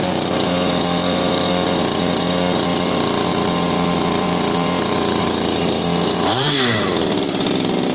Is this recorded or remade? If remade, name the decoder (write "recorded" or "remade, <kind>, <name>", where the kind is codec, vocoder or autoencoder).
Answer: remade, vocoder, BigVGAN v2